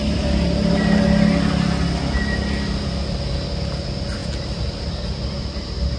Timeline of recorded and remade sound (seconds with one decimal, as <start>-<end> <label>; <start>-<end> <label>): 0.0-6.0 recorded